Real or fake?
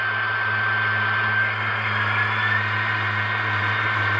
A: real